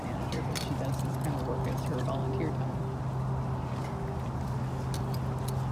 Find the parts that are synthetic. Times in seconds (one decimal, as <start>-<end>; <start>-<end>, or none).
none

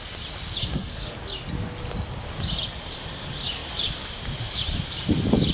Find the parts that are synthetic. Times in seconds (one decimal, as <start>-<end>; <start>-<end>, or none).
0.6-1.1

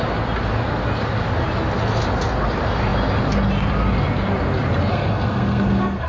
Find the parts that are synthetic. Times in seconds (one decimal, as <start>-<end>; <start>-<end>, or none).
4.9-6.1